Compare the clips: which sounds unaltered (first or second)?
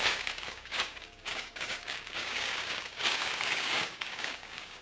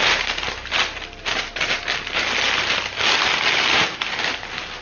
second